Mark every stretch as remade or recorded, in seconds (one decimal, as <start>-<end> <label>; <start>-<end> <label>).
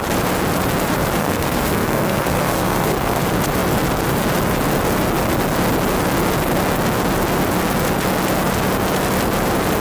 0.0-1.2 recorded; 1.2-3.2 remade; 3.2-9.8 recorded